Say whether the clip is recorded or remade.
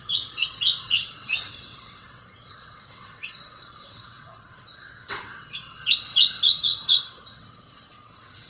remade